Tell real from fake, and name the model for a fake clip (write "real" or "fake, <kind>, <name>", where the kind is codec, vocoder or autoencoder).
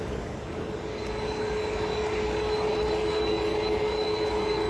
fake, codec, DAC